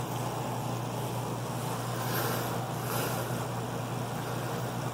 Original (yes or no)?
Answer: yes